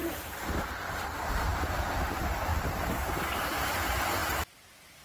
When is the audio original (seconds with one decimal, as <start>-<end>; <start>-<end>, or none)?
2.0-2.5; 3.4-5.0